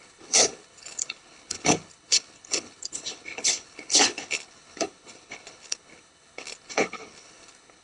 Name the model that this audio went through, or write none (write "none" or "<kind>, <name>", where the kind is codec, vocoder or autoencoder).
codec, HILCodec